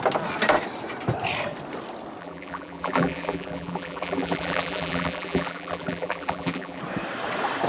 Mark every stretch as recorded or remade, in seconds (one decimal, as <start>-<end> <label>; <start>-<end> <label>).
0.0-2.2 recorded; 2.2-6.8 remade; 6.8-7.7 recorded